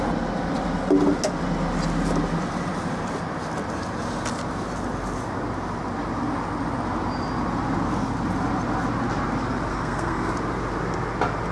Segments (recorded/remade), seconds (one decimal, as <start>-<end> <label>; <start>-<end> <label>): 0.0-9.7 recorded; 9.7-10.3 remade; 10.3-11.5 recorded